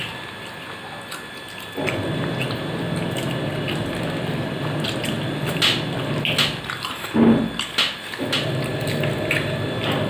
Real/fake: real